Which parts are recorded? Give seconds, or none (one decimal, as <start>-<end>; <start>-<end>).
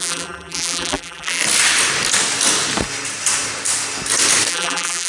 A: 1.4-4.5